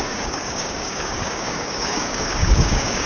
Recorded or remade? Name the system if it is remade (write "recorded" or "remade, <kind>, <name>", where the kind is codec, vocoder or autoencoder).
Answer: remade, codec, DAC